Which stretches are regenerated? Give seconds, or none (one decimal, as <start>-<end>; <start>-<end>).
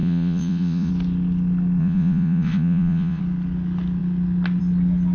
0.0-0.9; 1.8-3.2